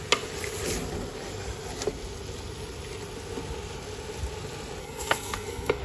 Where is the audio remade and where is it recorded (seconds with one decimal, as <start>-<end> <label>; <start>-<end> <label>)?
0.0-4.8 recorded; 4.8-5.8 remade